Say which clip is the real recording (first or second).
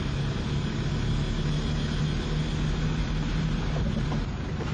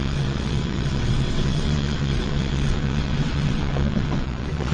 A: first